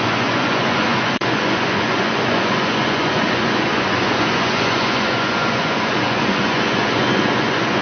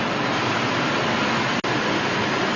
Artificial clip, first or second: first